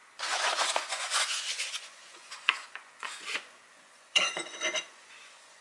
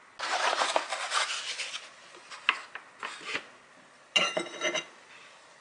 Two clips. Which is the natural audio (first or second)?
second